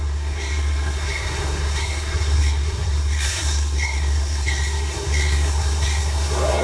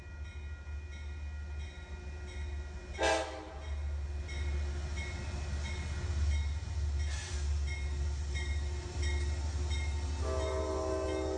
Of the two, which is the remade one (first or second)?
first